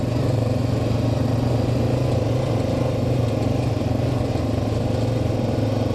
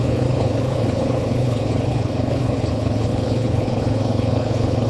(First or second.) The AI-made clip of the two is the second